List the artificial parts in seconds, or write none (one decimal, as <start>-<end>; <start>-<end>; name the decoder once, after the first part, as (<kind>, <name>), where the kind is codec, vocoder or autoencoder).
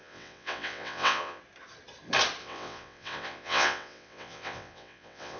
0.0-1.4 (vocoder, WaveNeXt); 2.4-5.4